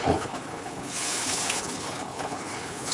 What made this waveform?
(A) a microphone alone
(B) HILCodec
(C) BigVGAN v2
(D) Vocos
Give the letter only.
B